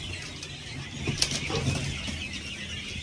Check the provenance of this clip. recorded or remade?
recorded